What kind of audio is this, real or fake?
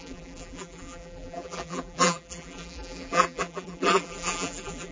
fake